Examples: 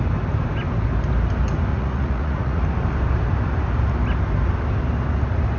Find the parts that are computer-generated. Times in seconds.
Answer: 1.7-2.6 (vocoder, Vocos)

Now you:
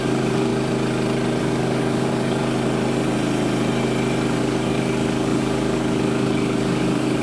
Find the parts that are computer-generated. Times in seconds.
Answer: 0.0-0.5 (codec, DAC); 1.4-2.4; 4.4-7.2

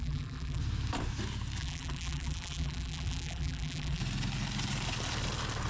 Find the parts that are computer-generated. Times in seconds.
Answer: 0.0-0.6 (vocoder, BigVGAN v2); 1.6-4.0

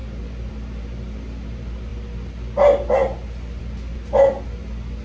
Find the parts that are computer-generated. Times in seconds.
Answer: none

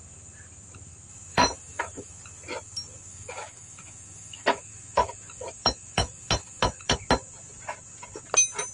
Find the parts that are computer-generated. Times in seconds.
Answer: 1.3-2.1 (autoencoder, DAC-VAE); 3.1-7.0

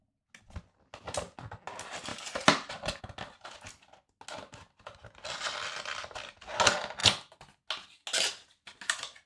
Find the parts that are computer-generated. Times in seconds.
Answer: 2.1-3.0 (vocoder, BigVGAN v2)

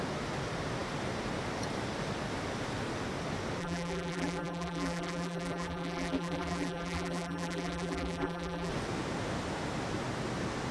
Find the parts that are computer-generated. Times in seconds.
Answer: 3.6-8.7 (vocoder, BigVGAN v2)